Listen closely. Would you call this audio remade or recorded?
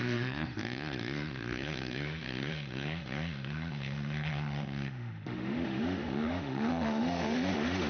remade